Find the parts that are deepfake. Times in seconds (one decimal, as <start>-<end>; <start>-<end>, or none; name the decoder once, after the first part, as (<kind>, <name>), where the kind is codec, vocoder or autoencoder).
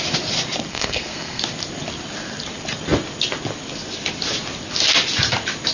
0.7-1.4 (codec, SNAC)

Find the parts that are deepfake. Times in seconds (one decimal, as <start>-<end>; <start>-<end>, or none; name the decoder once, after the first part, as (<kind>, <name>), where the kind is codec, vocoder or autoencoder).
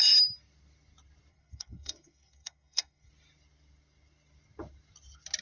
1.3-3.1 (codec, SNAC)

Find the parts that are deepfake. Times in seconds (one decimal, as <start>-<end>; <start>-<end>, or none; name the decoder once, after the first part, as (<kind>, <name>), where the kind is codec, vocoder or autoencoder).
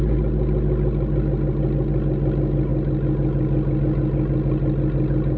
none